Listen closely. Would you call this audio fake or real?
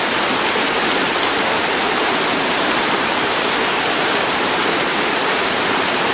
fake